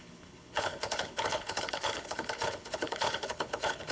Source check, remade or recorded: remade